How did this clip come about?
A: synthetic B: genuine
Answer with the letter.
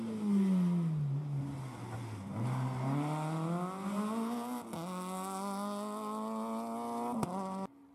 B